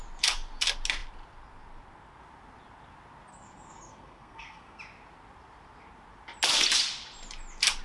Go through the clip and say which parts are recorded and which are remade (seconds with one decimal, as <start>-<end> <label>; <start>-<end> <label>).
0.0-3.3 recorded; 3.3-4.8 remade; 4.8-7.8 recorded

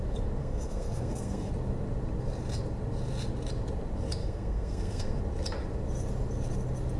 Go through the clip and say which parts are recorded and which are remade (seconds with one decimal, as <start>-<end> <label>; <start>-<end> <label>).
0.0-0.4 recorded; 0.4-1.5 remade; 1.5-4.2 recorded; 4.2-5.2 remade; 5.2-7.0 recorded

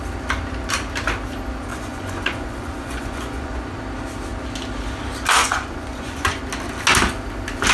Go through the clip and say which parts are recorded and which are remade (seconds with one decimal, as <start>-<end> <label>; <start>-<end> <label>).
0.0-1.7 recorded; 1.7-3.8 remade; 3.8-5.4 recorded; 5.4-6.4 remade; 6.4-7.7 recorded

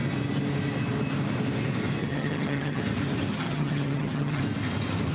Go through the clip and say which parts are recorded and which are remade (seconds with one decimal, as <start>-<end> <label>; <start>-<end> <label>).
0.0-2.0 recorded; 2.0-2.8 remade; 2.8-3.3 recorded; 3.3-4.4 remade; 4.4-5.1 recorded

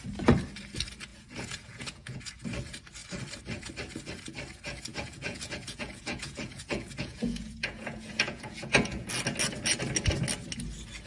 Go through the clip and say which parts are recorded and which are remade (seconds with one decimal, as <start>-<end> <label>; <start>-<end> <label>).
0.0-1.1 recorded; 1.1-2.2 remade; 2.2-4.9 recorded; 4.9-9.1 remade; 9.1-11.1 recorded

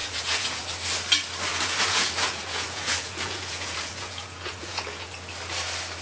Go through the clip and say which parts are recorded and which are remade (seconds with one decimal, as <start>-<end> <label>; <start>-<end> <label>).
0.0-0.6 remade; 0.6-1.5 recorded; 1.5-5.1 remade; 5.1-6.0 recorded